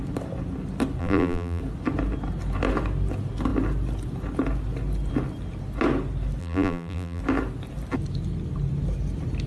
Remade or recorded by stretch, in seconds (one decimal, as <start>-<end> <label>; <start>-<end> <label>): 0.0-1.0 recorded; 1.0-1.6 remade; 1.6-6.4 recorded; 6.4-7.2 remade; 7.2-9.5 recorded